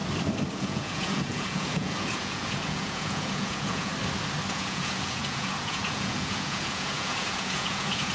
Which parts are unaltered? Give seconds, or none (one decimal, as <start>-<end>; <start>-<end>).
0.0-0.5; 3.9-4.5